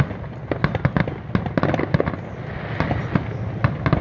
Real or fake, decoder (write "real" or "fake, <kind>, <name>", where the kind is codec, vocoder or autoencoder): real